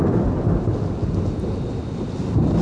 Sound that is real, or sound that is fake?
real